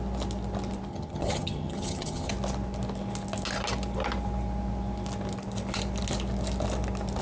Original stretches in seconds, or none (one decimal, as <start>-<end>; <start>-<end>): 0.0-0.9; 2.3-7.2